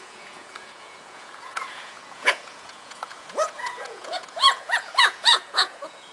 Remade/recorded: remade